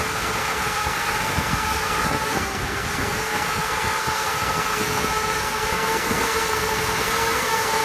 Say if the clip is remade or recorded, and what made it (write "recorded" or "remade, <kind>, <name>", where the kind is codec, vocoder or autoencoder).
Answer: remade, codec, SNAC